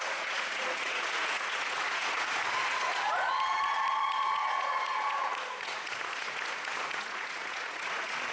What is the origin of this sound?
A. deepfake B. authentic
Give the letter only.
A